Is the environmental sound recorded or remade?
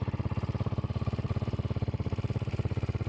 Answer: remade